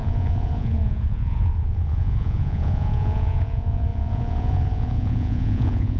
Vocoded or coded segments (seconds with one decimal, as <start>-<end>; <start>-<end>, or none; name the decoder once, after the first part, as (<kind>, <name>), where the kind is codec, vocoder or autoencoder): 0.0-6.0 (vocoder, Vocos)